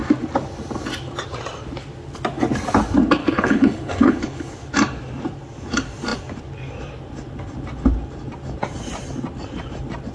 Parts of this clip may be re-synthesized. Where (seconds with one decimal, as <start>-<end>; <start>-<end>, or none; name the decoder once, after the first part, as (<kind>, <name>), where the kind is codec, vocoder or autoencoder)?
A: 3.2-4.5 (codec, HILCodec)